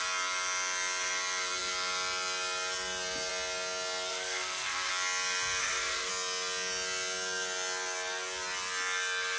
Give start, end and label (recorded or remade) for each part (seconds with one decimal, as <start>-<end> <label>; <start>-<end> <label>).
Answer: 0.0-4.1 recorded; 4.1-4.9 remade; 4.9-5.6 recorded; 5.6-6.1 remade; 6.1-9.4 recorded